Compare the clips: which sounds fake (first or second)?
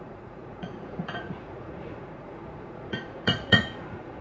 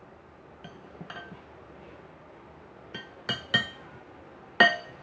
first